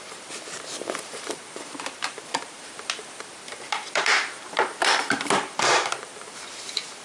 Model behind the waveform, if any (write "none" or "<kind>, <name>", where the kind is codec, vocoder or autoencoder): vocoder, BigVGAN v2